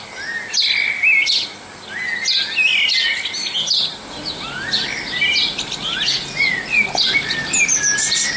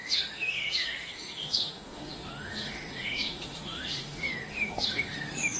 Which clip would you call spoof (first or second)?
second